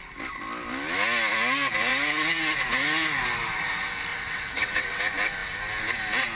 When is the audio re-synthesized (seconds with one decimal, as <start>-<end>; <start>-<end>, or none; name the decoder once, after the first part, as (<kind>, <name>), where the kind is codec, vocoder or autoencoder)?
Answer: 4.1-5.0 (vocoder, WaveNeXt)